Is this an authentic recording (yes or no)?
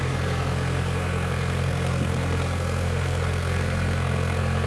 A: no